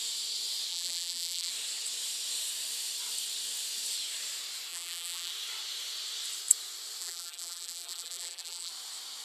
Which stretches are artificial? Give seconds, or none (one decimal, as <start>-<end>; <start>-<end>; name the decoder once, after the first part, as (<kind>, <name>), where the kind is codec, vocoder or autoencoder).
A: 0.7-1.5 (vocoder, BigVGAN v2); 4.7-5.3; 7.0-8.7